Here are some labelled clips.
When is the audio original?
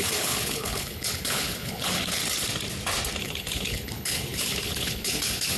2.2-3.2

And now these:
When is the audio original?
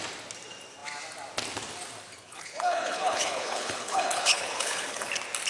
0.0-2.2; 5.1-5.5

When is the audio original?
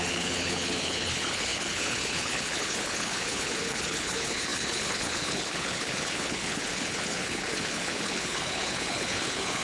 none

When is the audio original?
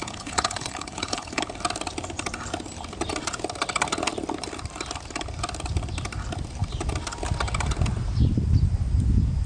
1.4-9.5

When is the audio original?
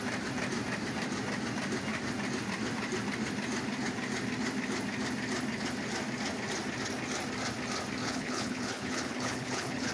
0.0-8.0